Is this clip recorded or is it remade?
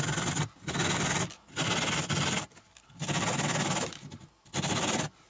recorded